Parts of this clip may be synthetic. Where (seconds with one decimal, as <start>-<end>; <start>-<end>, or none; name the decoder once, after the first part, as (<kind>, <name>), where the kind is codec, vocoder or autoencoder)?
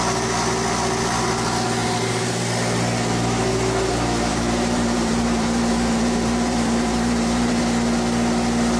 1.8-2.4 (vocoder, BigVGAN v2); 4.3-7.6